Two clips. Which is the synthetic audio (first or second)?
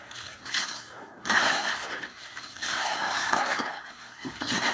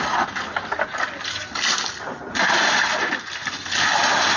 first